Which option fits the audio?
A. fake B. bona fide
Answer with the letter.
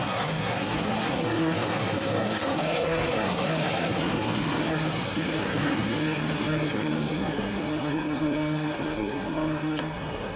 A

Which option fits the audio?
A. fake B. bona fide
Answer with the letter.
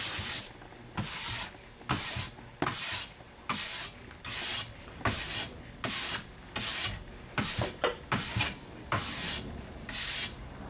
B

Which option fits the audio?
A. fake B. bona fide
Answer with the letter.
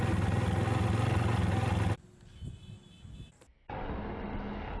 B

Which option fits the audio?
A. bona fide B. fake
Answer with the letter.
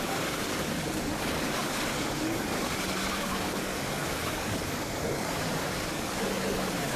B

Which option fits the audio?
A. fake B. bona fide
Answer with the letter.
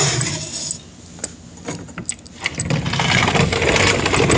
B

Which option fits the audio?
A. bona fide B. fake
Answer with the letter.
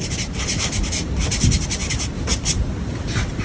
A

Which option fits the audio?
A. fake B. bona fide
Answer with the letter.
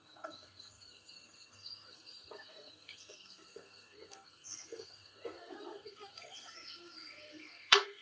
A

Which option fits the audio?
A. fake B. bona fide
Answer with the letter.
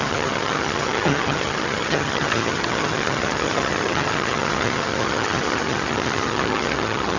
A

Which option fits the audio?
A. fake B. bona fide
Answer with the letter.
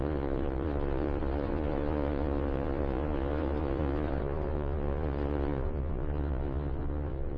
A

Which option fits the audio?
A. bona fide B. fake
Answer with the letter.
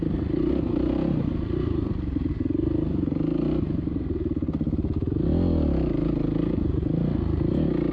A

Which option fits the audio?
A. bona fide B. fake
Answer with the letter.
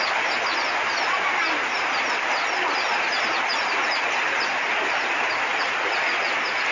A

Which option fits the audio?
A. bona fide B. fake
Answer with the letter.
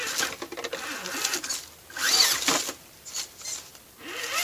A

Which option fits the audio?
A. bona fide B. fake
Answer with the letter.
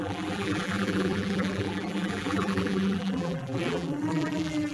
B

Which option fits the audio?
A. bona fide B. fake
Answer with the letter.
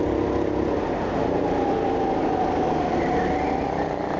A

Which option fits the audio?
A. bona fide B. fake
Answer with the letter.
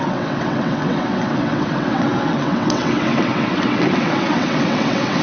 B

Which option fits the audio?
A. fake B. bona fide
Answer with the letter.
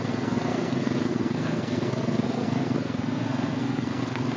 A